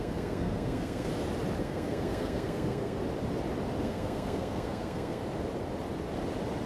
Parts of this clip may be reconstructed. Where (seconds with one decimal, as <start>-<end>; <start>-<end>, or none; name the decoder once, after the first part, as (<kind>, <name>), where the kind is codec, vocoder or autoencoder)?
0.0-1.1 (codec, SNAC); 1.6-3.0; 3.8-5.2